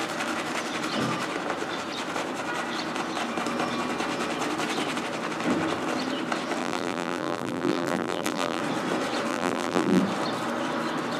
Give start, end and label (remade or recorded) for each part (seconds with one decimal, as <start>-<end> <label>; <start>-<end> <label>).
0.0-6.6 recorded; 6.6-8.6 remade; 8.6-9.3 recorded; 9.3-10.0 remade; 10.0-11.2 recorded